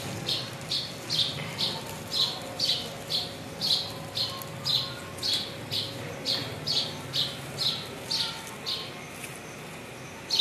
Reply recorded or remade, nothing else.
recorded